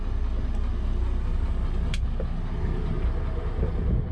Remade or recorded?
recorded